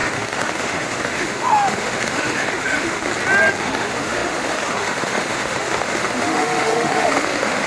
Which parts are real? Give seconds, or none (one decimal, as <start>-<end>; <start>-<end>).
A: 3.1-3.6